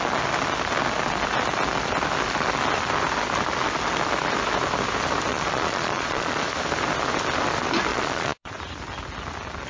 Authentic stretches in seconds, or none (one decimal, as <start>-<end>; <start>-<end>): 0.0-5.3; 6.4-7.9; 8.5-9.7